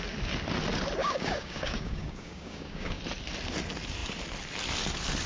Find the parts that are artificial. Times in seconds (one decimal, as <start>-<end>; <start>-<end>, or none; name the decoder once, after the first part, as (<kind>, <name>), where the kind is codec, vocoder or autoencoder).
1.0-3.0 (codec, DAC)